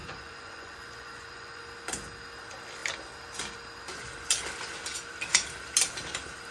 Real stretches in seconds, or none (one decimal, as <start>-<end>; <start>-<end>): 1.6-6.5